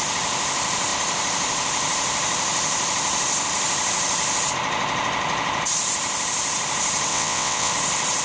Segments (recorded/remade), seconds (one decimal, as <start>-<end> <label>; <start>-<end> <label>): 0.0-7.1 recorded; 7.1-7.7 remade; 7.7-8.2 recorded